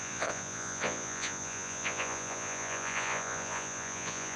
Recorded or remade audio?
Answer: remade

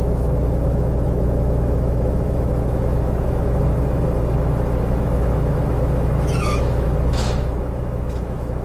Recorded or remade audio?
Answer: remade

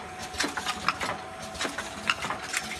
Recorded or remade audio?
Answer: recorded